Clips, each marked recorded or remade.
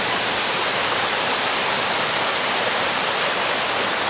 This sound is recorded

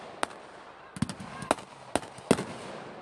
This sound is recorded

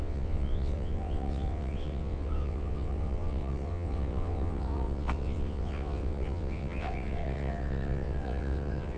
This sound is remade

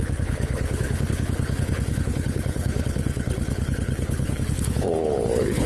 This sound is remade